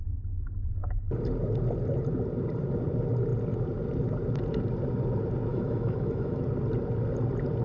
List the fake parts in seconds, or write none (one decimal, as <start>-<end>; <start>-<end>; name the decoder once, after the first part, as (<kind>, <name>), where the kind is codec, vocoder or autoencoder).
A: 5.5-6.4 (autoencoder, DAC-VAE)